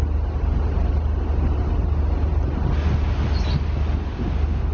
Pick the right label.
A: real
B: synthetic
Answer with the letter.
A